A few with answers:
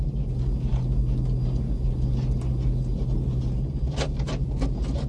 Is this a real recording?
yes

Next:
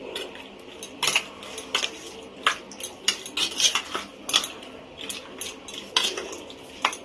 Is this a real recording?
yes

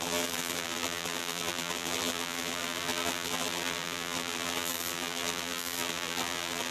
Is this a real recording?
no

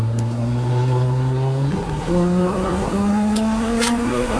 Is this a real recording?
no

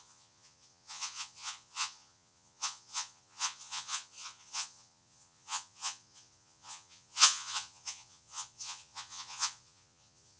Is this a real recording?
no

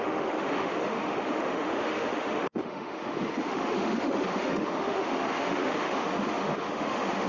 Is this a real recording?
no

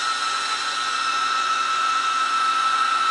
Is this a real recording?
no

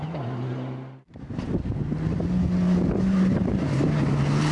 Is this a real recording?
yes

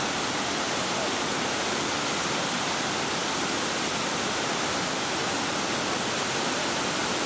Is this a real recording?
yes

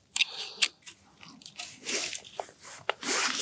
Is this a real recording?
yes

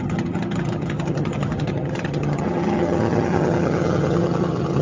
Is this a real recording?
no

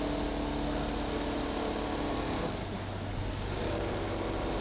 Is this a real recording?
yes